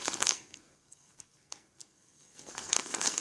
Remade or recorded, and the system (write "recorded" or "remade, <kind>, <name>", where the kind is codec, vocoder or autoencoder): remade, codec, SNAC